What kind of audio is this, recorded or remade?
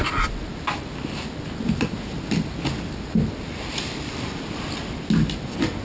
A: recorded